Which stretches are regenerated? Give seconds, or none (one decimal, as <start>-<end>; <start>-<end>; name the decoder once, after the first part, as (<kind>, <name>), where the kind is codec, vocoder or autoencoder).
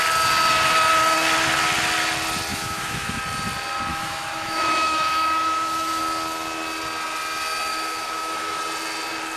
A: 2.5-3.2 (autoencoder, DAC-VAE); 3.9-6.0; 7.7-8.6